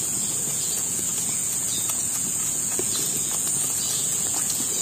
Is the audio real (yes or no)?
no